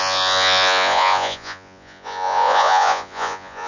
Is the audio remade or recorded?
remade